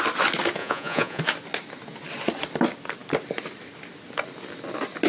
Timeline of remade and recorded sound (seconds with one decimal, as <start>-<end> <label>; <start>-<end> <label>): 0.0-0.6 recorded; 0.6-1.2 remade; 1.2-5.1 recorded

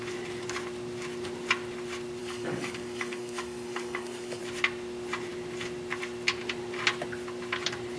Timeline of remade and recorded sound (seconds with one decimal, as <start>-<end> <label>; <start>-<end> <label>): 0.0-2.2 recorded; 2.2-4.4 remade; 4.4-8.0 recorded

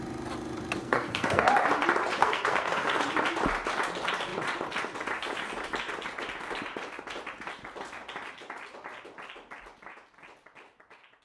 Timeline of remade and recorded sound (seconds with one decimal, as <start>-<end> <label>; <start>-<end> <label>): 0.0-0.8 recorded; 0.8-1.5 remade; 1.5-2.2 recorded; 2.2-3.0 remade; 3.0-11.2 recorded